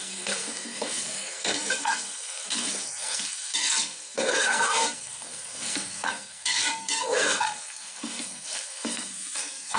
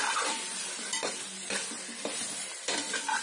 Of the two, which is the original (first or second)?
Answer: second